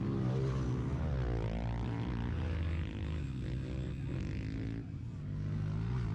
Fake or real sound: real